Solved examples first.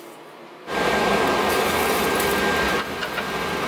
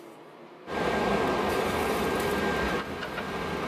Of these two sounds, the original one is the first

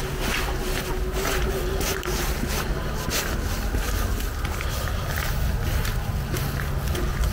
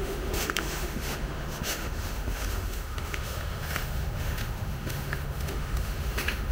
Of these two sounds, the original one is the first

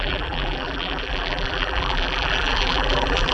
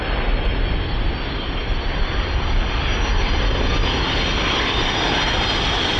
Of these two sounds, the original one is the second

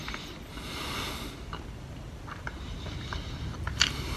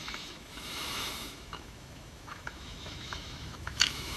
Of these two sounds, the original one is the first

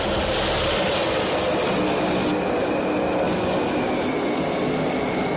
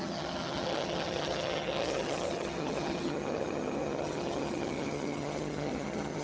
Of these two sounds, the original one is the first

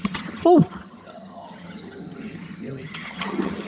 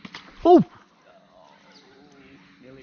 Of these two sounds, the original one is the second